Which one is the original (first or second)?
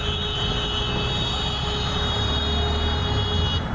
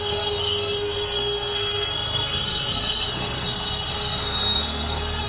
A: first